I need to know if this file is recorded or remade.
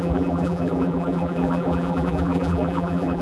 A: remade